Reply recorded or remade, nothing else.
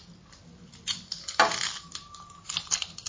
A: recorded